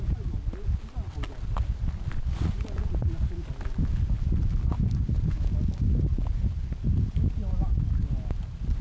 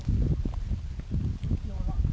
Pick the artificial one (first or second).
second